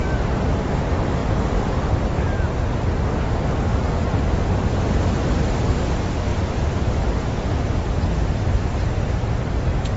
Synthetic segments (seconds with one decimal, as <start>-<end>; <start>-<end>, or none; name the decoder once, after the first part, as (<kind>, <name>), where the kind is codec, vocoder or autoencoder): none